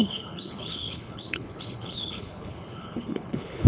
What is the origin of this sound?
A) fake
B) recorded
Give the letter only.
A